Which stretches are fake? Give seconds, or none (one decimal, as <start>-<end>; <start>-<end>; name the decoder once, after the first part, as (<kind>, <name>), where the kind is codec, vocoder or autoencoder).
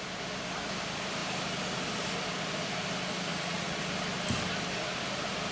3.3-3.8 (vocoder, Vocos)